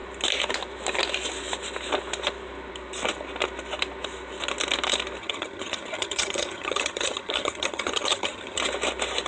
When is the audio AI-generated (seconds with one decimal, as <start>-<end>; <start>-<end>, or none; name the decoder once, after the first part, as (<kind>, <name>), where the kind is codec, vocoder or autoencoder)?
5.2-8.6 (vocoder, HiFi-GAN)